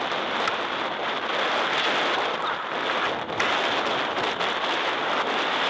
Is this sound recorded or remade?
recorded